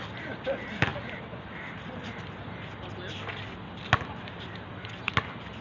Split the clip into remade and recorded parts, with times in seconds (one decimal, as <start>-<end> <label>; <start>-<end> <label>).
0.0-5.6 recorded